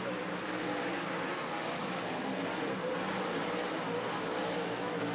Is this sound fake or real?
real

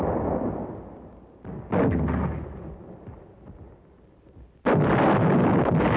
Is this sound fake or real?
real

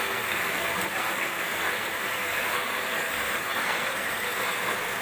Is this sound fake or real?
fake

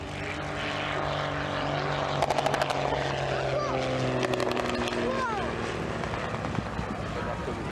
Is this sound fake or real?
real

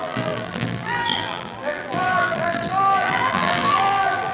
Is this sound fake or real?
fake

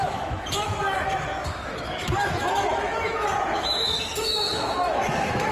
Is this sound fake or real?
fake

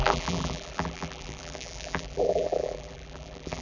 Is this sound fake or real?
fake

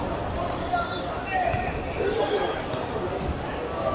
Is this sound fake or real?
real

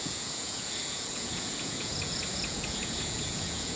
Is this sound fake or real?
fake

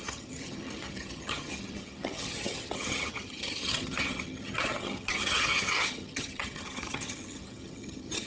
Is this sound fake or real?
fake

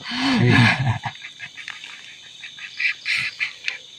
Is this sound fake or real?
real